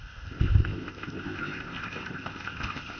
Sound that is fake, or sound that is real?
fake